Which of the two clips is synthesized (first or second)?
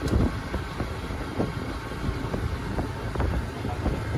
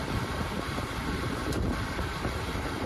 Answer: second